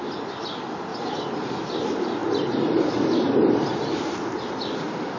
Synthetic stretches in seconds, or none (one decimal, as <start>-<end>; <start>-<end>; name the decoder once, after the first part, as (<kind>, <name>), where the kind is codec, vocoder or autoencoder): 0.9-1.5 (vocoder, BigVGAN v2)